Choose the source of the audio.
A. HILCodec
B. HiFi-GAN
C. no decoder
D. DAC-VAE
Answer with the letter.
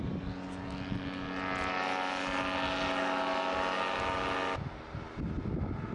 C